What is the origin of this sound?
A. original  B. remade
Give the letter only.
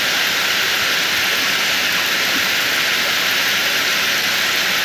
A